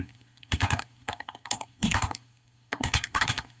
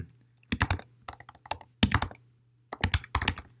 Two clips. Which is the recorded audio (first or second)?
second